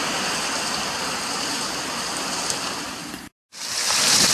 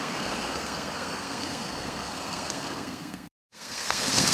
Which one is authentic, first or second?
first